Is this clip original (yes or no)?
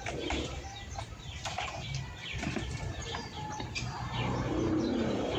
no